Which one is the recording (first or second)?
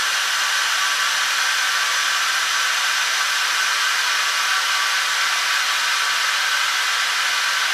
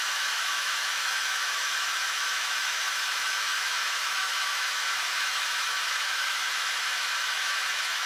first